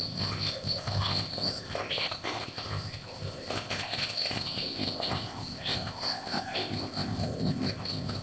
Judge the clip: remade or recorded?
remade